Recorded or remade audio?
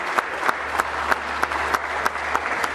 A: recorded